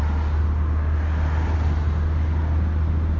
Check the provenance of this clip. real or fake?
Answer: real